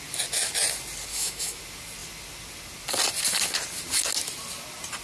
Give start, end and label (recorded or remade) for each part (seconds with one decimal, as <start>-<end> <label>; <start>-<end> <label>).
0.0-1.1 recorded; 1.1-1.6 remade; 1.6-5.0 recorded